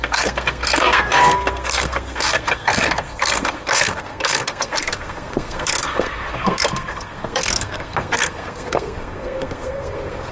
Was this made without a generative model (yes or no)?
no